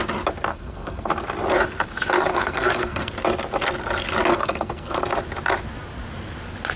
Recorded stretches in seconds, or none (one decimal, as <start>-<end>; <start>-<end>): 0.0-0.5; 1.1-2.3; 3.1-4.3; 5.0-6.8